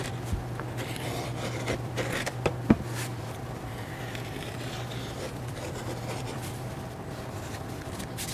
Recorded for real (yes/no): yes